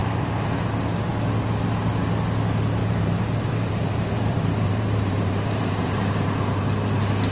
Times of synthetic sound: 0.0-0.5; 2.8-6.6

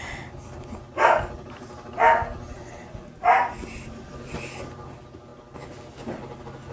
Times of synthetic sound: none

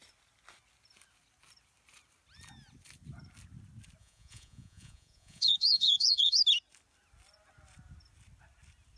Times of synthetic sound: 4.0-6.4

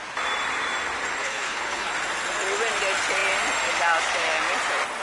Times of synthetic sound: 1.2-1.9